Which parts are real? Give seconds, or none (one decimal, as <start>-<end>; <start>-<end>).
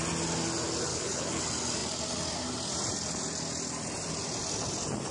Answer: 0.0-0.9; 1.4-5.1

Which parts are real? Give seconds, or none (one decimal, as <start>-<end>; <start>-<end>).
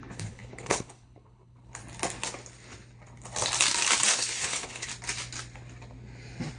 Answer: 1.8-4.1; 4.9-6.6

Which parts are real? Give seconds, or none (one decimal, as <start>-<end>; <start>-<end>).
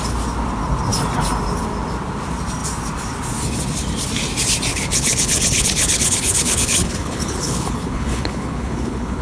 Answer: 0.0-4.7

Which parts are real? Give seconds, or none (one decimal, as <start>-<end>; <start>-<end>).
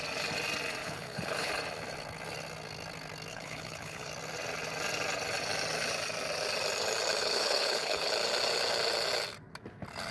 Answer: 0.0-0.8; 1.5-3.3; 4.1-7.2; 8.1-10.1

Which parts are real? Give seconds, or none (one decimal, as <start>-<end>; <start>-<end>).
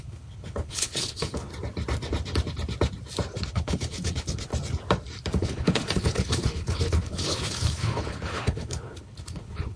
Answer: 1.5-3.5; 4.5-5.4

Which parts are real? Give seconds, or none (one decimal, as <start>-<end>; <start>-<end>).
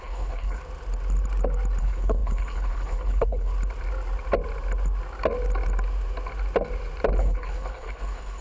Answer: 0.6-1.8; 3.5-7.2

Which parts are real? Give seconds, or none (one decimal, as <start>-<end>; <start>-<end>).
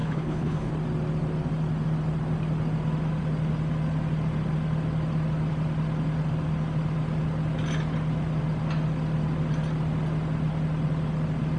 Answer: 0.7-11.6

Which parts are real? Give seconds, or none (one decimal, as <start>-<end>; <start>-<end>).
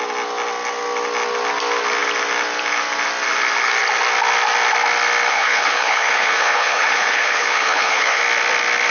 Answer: 0.0-5.3; 8.2-8.9